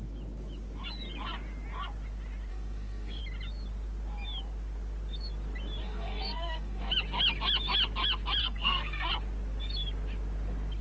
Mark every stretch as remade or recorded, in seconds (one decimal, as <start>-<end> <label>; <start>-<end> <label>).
0.0-2.5 recorded; 2.5-3.2 remade; 3.2-5.8 recorded; 5.8-6.9 remade; 6.9-8.4 recorded; 8.4-9.1 remade; 9.1-10.8 recorded